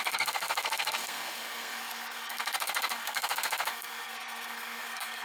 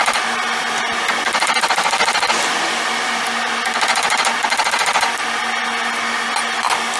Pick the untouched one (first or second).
second